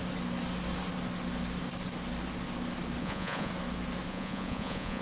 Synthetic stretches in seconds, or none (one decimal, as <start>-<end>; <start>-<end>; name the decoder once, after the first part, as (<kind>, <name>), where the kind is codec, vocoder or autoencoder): 3.0-3.5 (vocoder, Vocos); 4.1-5.0